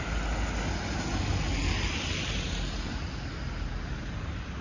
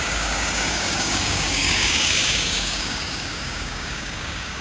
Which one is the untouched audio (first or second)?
first